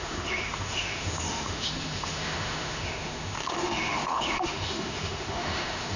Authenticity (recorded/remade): remade